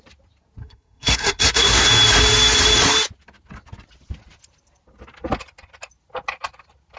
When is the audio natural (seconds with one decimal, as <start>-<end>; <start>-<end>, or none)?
0.0-0.6; 1.9-7.0